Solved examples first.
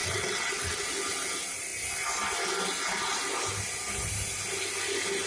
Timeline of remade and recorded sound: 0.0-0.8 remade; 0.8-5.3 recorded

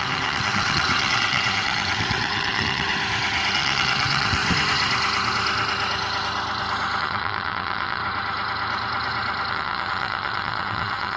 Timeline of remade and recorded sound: 0.0-2.9 remade; 2.9-3.5 recorded; 3.5-4.4 remade; 4.4-7.0 recorded; 7.0-8.0 remade; 8.0-9.5 recorded; 9.5-11.2 remade

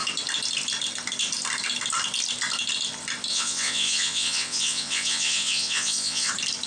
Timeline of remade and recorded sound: 0.0-3.3 recorded; 3.3-6.3 remade; 6.3-6.7 recorded

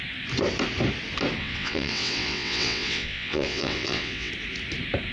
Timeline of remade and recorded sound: 0.0-1.4 recorded; 1.4-4.3 remade; 4.3-5.1 recorded